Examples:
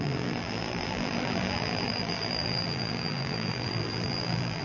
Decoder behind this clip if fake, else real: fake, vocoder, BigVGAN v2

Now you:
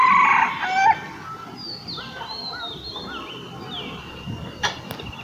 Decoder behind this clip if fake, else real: real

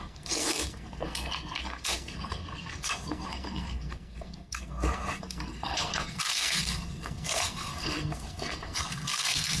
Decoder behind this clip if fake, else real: fake, codec, SNAC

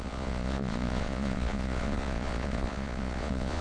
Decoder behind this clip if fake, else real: fake, vocoder, Vocos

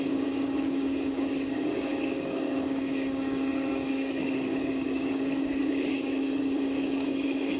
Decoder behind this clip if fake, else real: fake, codec, DAC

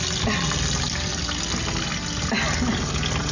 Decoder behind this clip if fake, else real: real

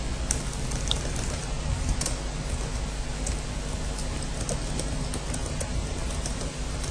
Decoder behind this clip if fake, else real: real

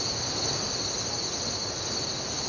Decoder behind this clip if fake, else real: real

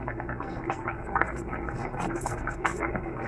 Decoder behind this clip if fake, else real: fake, codec, SNAC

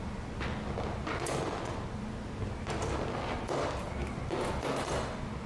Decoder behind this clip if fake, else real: real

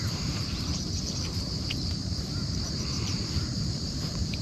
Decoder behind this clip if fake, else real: fake, vocoder, BigVGAN v2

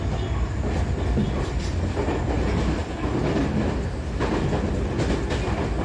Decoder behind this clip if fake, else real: real